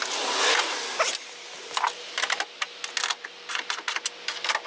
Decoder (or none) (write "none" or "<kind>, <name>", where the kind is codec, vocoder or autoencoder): none